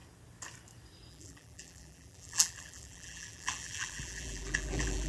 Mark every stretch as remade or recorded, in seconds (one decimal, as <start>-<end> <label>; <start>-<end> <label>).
0.0-1.1 recorded; 1.1-5.1 remade